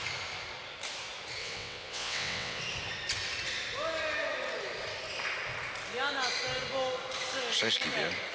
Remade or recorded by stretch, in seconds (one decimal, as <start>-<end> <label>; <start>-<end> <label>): 0.0-1.4 recorded; 1.4-2.6 remade; 2.6-8.3 recorded